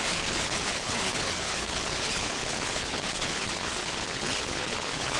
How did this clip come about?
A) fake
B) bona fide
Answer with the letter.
A